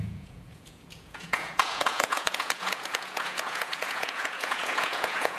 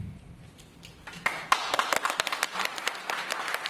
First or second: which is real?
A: second